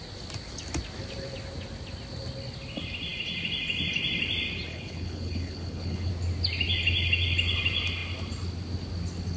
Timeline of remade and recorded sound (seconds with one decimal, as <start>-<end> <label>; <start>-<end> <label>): 0.0-4.7 recorded; 4.7-6.1 remade; 6.1-9.4 recorded